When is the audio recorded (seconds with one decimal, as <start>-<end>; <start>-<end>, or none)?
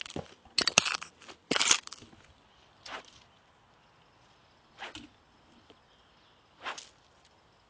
0.0-7.7